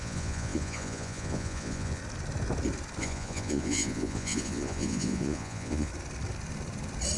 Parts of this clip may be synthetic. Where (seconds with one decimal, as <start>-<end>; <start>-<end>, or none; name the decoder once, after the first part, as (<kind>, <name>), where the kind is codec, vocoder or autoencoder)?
0.0-2.0 (vocoder, Vocos); 3.0-5.9